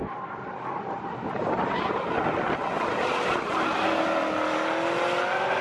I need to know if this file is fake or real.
real